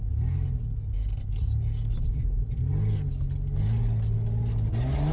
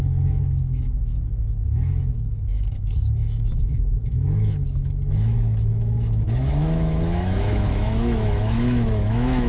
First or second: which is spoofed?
second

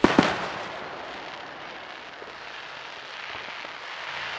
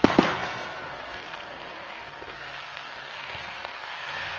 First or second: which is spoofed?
second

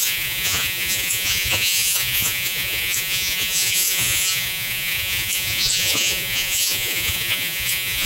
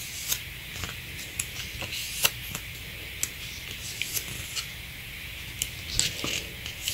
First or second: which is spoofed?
first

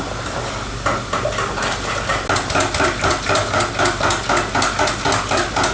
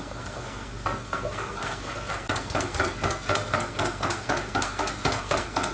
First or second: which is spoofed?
second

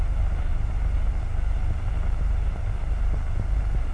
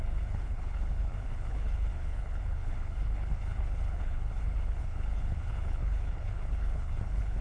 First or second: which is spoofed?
second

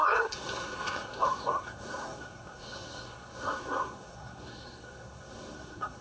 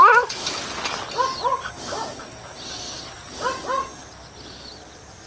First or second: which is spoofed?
first